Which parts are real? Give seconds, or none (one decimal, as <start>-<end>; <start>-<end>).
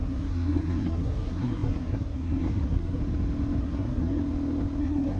3.0-3.6; 4.2-4.8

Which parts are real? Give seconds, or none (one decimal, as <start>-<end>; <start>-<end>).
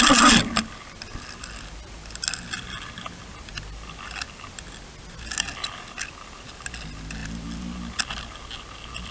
0.0-9.1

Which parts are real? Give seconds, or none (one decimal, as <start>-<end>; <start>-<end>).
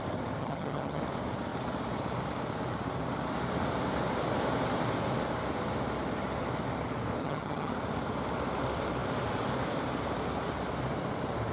0.0-0.4; 1.0-7.2; 7.7-11.5